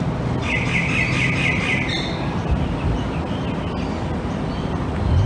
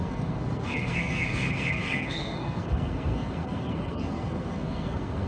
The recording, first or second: first